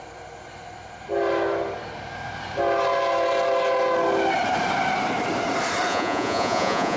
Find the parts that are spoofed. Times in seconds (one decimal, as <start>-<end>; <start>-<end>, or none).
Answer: 5.9-7.0